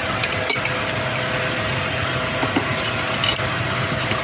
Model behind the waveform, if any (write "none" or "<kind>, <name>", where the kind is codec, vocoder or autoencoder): none